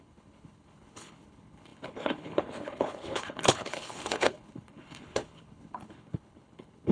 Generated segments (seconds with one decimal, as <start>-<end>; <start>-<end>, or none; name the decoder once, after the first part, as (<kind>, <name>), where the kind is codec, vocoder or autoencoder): 0.0-6.9 (codec, HILCodec)

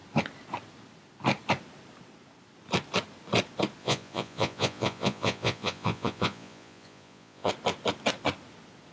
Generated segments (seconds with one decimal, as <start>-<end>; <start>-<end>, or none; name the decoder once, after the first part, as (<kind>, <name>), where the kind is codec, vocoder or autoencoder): 3.8-7.5 (vocoder, Vocos)

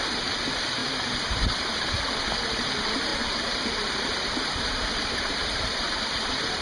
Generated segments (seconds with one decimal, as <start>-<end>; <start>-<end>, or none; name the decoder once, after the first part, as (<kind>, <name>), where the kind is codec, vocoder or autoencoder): 0.8-2.2 (vocoder, BigVGAN v2); 3.1-6.6